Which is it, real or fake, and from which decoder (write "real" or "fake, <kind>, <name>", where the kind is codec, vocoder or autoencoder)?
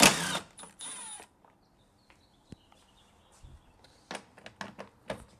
real